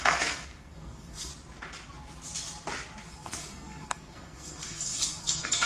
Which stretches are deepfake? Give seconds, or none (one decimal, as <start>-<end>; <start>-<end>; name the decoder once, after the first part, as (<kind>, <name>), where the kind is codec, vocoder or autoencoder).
0.0-1.3 (codec, SNAC); 3.1-5.7